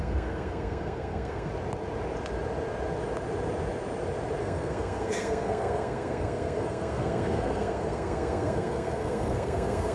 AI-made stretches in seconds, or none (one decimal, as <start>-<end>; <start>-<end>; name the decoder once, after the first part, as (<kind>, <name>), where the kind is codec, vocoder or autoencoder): 0.0-1.5 (codec, SNAC); 4.4-9.9